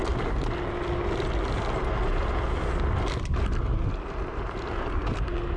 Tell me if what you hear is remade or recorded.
recorded